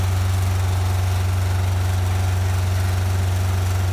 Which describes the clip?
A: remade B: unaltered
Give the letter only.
B